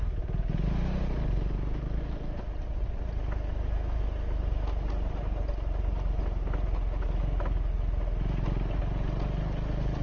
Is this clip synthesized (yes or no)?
no